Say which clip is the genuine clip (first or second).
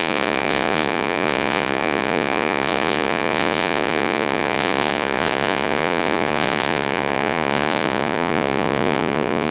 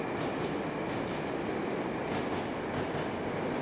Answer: second